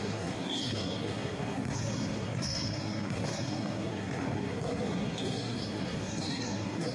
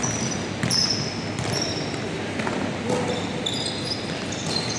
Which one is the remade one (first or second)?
first